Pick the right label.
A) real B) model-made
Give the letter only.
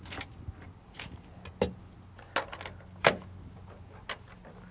A